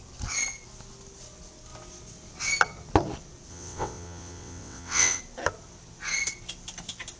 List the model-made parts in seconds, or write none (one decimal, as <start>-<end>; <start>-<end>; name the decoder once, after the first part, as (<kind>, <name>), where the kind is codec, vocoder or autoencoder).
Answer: 3.5-5.2 (vocoder, WaveNeXt)

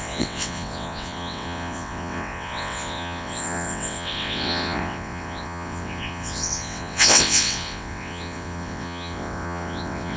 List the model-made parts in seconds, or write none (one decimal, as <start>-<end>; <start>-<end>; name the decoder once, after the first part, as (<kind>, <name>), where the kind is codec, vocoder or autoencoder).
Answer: 0.0-10.2 (vocoder, WaveNeXt)

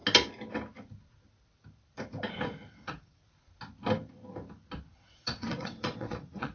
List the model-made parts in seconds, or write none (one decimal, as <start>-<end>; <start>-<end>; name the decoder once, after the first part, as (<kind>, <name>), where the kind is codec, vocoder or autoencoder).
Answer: 2.7-3.2 (vocoder, WaveNeXt); 4.9-6.5

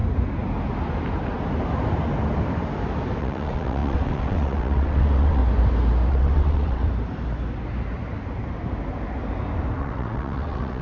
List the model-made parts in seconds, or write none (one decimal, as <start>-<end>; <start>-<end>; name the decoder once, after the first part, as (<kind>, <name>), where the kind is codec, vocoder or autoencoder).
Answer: 3.2-5.4 (vocoder, WaveNeXt); 6.1-6.8; 9.8-10.8

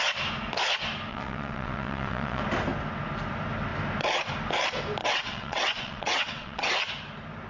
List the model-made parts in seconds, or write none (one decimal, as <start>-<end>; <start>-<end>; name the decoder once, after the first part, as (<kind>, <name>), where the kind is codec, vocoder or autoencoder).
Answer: 1.1-2.4 (vocoder, WaveNeXt); 5.0-6.7

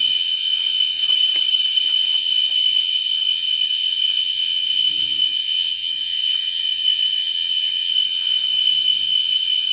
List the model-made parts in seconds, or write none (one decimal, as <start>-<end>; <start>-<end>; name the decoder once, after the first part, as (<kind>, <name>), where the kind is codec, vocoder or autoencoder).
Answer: 0.0-1.0 (vocoder, WaveNeXt); 1.8-9.7

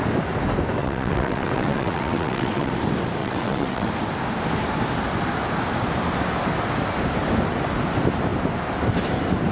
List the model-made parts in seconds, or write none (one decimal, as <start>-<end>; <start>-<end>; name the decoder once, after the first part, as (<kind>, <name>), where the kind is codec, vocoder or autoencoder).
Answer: 0.8-2.7 (vocoder, WaveNeXt); 3.2-3.9